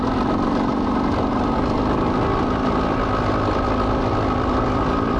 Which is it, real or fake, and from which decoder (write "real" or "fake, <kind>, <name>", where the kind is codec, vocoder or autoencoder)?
real